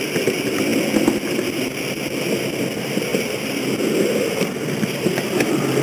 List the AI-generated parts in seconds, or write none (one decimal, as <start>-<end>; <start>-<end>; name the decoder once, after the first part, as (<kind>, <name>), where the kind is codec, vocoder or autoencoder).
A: 0.0-0.7 (vocoder, BigVGAN v2); 2.2-5.8